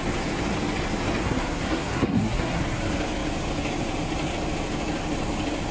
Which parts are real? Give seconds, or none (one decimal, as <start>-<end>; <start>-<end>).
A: 0.0-1.2; 2.6-5.7